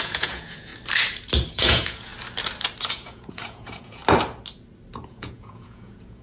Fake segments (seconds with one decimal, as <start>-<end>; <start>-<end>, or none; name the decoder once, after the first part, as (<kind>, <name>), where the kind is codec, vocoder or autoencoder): 0.0-0.7 (vocoder, Vocos); 1.5-2.1; 2.9-4.0; 5.1-6.2